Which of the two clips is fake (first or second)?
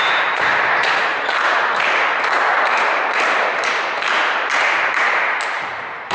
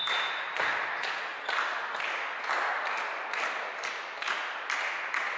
first